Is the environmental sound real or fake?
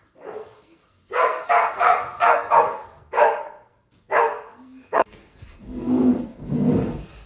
fake